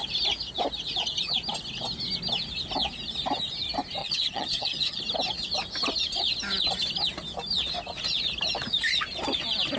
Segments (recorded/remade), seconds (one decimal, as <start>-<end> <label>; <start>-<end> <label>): 0.0-4.0 recorded; 4.0-5.0 remade; 5.0-9.8 recorded